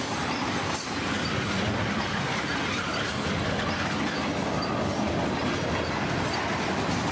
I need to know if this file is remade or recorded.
recorded